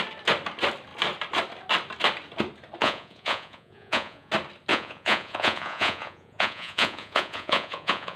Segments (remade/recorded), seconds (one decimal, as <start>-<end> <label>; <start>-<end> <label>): 0.0-2.8 recorded; 2.8-4.3 remade; 4.3-4.7 recorded; 4.7-8.2 remade